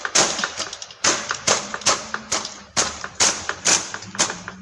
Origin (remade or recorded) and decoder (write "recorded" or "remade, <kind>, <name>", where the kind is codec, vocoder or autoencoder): remade, vocoder, BigVGAN v2